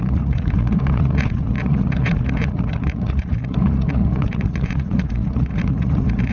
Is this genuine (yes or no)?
no